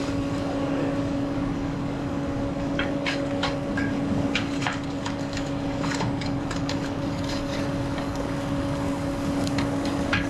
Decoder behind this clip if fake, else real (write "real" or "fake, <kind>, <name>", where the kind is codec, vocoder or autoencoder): fake, codec, DAC